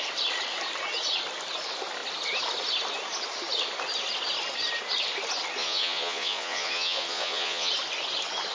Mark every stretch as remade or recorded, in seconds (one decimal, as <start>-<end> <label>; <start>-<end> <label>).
0.0-5.6 recorded; 5.6-7.7 remade; 7.7-8.5 recorded